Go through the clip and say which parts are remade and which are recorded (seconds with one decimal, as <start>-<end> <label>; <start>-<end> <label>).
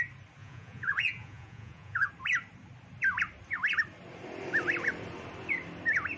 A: 0.0-0.4 recorded; 0.4-2.1 remade; 2.1-6.2 recorded